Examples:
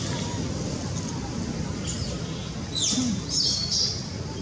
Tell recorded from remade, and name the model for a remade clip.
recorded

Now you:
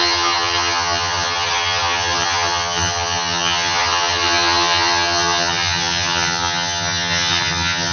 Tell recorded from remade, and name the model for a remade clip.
remade, vocoder, HiFi-GAN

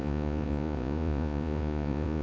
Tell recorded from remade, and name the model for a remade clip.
remade, vocoder, Vocos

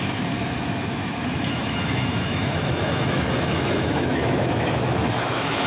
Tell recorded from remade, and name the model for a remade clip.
remade, autoencoder, DAC-VAE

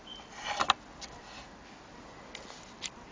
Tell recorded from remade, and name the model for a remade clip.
recorded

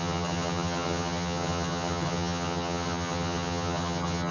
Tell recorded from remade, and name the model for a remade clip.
remade, vocoder, HiFi-GAN